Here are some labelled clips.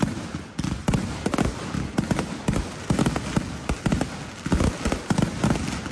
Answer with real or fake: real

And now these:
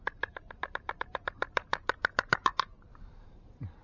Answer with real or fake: fake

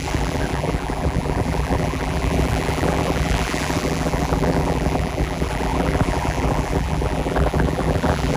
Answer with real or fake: fake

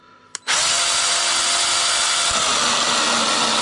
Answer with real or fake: real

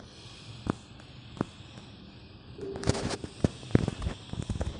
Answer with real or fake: fake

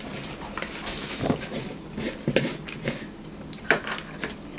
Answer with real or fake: real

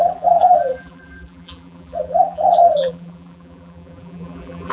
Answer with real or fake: fake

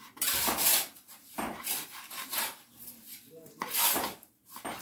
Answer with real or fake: fake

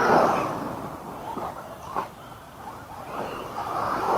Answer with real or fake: real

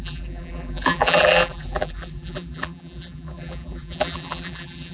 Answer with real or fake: fake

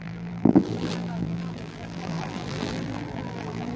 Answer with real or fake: fake